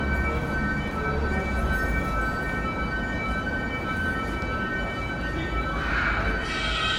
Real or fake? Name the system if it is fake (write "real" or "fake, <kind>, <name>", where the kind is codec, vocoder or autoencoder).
real